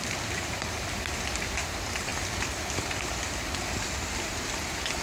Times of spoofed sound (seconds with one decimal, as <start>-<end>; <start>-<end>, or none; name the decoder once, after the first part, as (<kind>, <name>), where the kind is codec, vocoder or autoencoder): 0.0-2.1 (vocoder, BigVGAN v2); 3.0-5.0